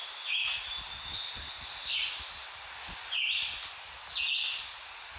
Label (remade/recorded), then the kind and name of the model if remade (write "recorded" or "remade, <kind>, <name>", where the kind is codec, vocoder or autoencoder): recorded